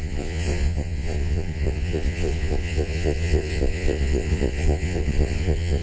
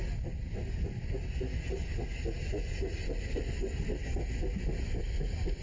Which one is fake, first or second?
first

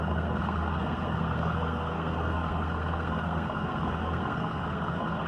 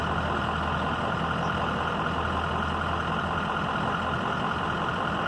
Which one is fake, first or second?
first